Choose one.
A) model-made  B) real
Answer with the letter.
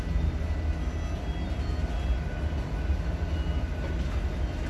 B